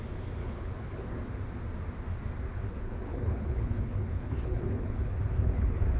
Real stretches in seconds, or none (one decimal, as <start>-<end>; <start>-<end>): 0.0-0.4; 1.2-2.5